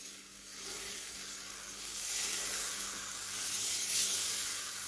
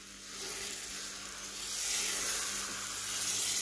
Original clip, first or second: second